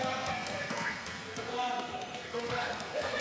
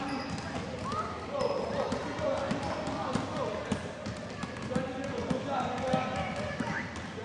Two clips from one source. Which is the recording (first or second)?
second